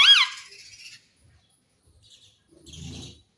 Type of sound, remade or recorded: recorded